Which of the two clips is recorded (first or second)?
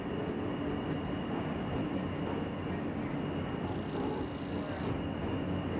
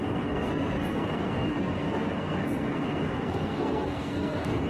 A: first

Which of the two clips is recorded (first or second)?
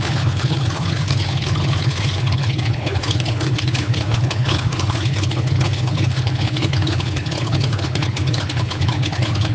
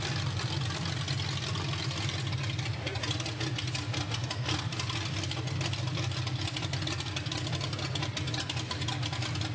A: second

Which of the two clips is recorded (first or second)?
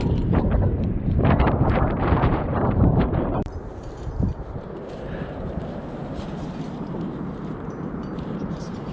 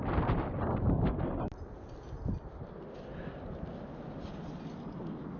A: second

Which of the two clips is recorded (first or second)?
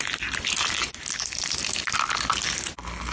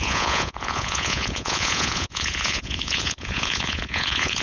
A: first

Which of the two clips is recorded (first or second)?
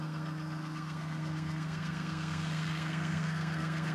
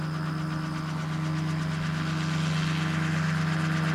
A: second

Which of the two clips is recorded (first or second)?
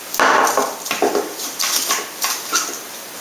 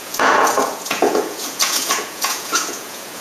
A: first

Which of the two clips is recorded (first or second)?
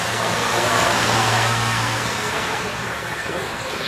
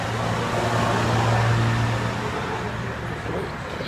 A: second